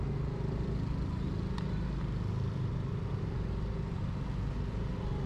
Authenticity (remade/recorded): recorded